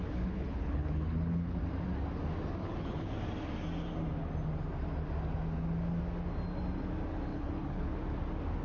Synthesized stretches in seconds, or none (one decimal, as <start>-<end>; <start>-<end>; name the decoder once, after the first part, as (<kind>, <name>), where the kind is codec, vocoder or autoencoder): 0.0-1.6 (codec, HILCodec); 2.6-3.1; 7.3-8.0